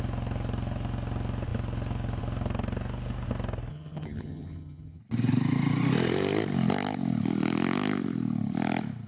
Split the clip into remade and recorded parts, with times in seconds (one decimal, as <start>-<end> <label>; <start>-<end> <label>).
0.0-3.7 recorded; 3.7-5.0 remade; 5.0-9.1 recorded